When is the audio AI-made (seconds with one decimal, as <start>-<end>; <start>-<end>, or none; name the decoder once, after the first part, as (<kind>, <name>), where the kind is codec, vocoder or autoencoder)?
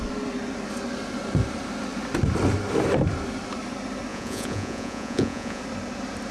4.1-5.6 (vocoder, Vocos)